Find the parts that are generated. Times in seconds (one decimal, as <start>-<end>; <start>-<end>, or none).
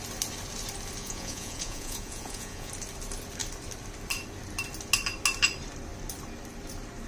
1.0-2.7